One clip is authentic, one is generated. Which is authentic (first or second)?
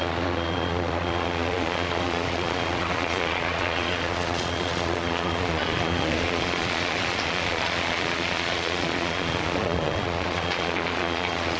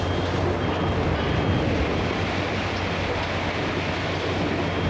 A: second